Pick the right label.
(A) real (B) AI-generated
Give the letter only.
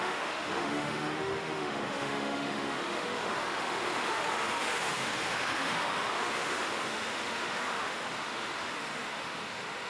B